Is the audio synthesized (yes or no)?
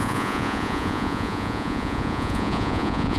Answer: yes